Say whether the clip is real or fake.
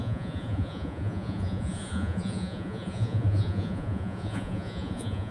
fake